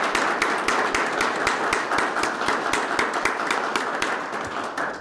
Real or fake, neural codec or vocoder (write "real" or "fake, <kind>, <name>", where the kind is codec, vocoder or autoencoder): real